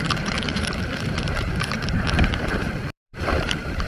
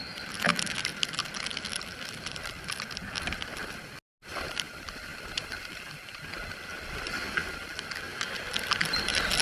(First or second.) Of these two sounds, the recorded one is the second